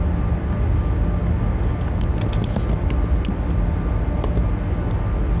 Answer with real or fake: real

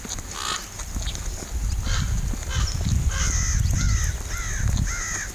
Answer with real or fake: real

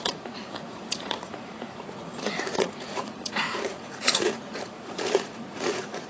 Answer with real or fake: fake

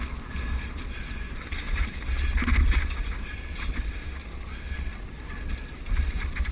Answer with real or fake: real